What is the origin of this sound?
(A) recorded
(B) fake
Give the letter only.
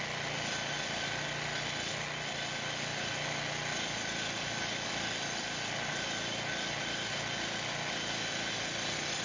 A